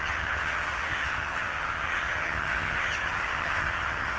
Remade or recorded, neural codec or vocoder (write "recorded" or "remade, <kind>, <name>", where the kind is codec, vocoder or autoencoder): remade, vocoder, HiFi-GAN